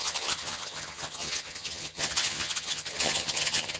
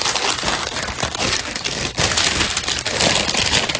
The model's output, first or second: first